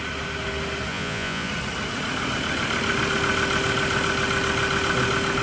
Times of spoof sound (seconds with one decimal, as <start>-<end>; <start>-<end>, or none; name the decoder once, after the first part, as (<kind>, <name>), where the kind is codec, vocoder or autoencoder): 0.9-1.5 (vocoder, Vocos)